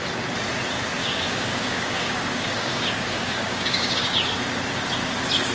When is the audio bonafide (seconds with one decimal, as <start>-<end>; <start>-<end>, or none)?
0.0-1.0; 4.3-5.5